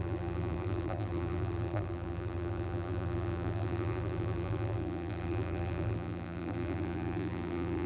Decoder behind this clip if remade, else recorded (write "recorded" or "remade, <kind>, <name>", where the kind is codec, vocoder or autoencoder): remade, vocoder, BigVGAN v2